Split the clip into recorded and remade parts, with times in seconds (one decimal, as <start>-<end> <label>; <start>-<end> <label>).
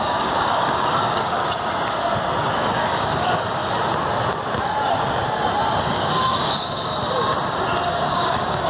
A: 0.0-1.4 remade; 1.4-2.4 recorded; 2.4-3.6 remade; 3.6-5.8 recorded; 5.8-6.9 remade; 6.9-7.9 recorded; 7.9-8.7 remade